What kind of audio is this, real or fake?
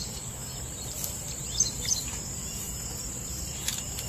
fake